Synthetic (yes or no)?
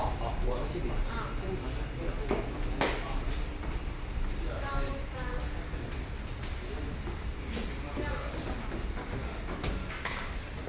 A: no